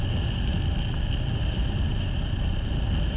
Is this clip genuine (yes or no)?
yes